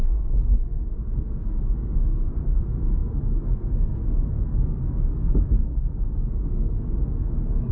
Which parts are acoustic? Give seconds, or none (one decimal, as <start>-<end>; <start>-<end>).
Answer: none